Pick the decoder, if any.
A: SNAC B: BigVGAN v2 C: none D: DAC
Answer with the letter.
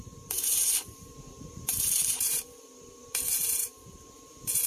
B